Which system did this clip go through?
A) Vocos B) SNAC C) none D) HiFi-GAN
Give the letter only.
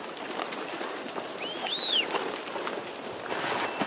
C